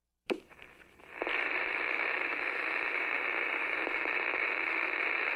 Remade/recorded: remade